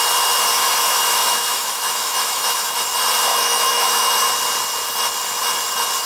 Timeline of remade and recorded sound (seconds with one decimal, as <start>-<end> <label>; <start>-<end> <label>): 0.0-0.5 recorded; 0.5-2.7 remade; 2.7-3.3 recorded; 3.3-4.1 remade; 4.1-6.1 recorded